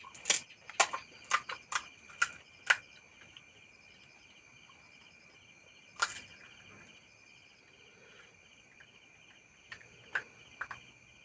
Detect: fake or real real